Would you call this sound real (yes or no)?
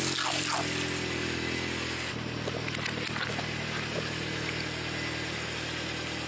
yes